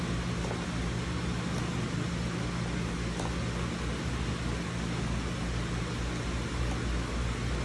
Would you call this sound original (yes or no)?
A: yes